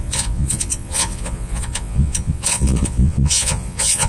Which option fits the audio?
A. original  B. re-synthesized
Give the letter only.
B